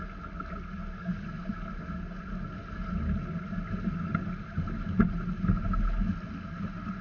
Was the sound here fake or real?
real